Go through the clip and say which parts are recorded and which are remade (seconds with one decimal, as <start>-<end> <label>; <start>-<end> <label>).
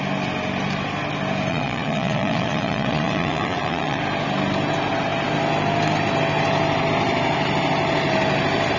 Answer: 0.0-1.5 recorded; 1.5-4.0 remade; 4.0-8.8 recorded